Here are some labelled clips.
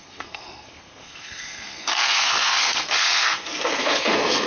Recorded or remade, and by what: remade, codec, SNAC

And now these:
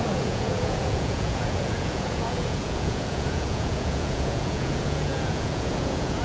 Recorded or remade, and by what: remade, vocoder, Vocos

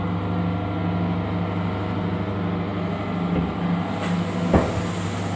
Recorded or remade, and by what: recorded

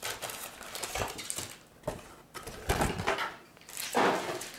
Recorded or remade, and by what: recorded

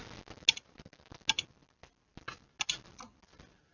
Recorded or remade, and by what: recorded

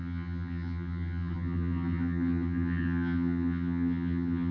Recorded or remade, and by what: remade, vocoder, HiFi-GAN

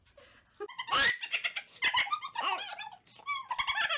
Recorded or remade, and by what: recorded